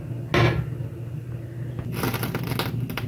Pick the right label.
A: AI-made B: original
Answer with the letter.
B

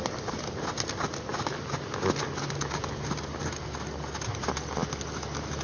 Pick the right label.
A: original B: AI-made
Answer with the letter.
A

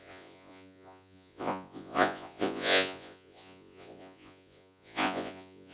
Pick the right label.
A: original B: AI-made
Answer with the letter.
B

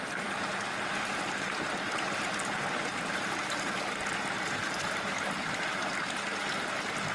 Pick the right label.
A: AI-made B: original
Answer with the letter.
B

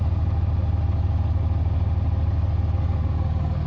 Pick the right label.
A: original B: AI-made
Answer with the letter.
A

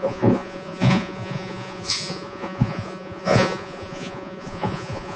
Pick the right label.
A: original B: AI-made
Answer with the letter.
B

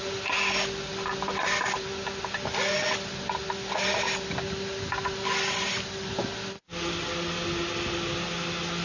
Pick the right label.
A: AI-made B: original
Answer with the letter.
B